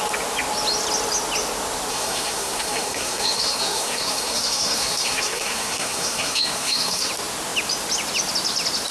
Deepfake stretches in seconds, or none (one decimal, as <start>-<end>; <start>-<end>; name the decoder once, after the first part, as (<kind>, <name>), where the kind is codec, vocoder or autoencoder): 1.9-7.1 (codec, SNAC)